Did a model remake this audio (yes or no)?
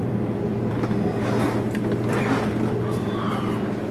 yes